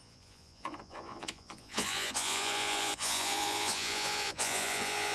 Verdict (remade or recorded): remade